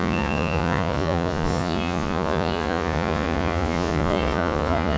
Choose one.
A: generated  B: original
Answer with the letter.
A